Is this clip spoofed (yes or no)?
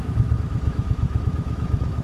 yes